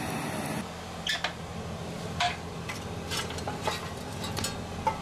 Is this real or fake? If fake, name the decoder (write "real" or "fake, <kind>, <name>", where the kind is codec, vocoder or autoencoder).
real